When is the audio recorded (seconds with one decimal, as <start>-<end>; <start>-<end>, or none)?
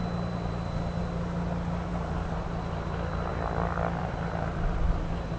0.0-1.9; 2.6-5.4